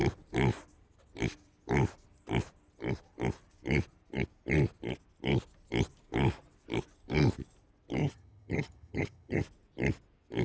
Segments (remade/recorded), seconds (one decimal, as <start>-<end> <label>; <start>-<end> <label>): 0.0-8.0 recorded; 8.0-9.4 remade; 9.4-10.4 recorded